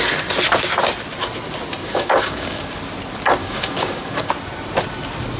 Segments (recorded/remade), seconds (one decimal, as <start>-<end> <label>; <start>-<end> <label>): 0.0-1.8 recorded; 1.8-2.8 remade; 2.8-3.4 recorded; 3.4-4.3 remade; 4.3-5.4 recorded